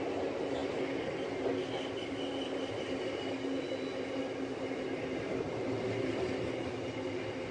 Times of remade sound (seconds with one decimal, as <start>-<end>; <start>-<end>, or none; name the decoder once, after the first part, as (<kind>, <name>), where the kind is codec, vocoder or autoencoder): none